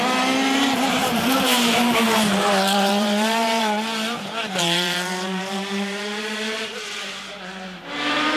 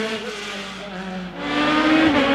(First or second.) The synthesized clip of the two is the first